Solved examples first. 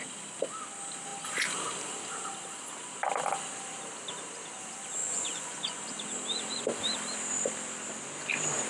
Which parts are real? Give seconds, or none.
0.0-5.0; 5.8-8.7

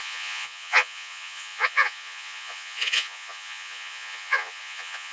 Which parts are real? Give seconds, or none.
none

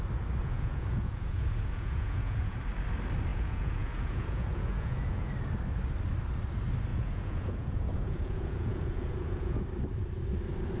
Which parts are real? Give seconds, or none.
0.0-0.4; 2.6-3.3; 5.3-6.9; 9.6-10.8

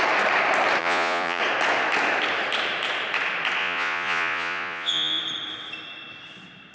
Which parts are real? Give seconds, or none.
0.0-0.8; 1.4-3.6; 5.2-6.7